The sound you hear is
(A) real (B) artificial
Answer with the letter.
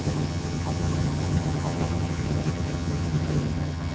B